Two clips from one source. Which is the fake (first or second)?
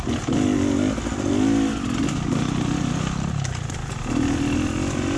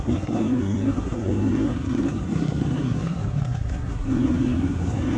second